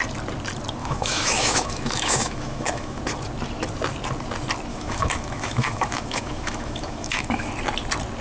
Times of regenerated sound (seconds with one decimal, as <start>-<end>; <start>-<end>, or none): 0.8-3.0; 4.7-7.5